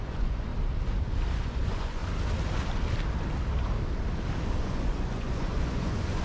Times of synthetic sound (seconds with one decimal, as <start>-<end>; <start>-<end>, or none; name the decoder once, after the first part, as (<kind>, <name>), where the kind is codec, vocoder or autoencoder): 0.0-0.5 (vocoder, Vocos); 1.4-2.0; 4.6-6.2